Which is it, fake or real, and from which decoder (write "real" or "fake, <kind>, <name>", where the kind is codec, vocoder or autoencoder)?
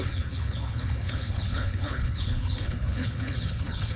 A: fake, codec, HILCodec